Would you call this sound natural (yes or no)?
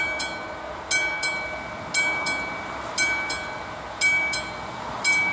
yes